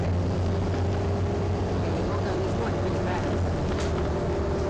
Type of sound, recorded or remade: recorded